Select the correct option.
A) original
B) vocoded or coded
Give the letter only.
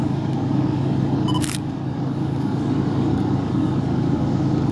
B